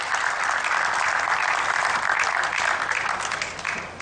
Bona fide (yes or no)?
yes